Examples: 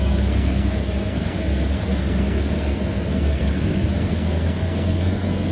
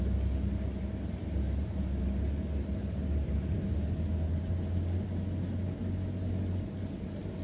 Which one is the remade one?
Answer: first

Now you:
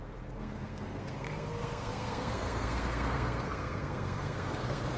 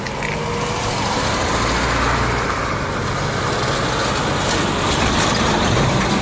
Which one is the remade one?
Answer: first